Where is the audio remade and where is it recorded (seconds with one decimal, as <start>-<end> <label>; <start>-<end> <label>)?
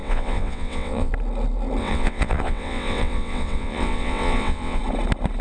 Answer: 0.0-1.1 remade; 1.1-1.8 recorded; 1.8-4.8 remade; 4.8-5.4 recorded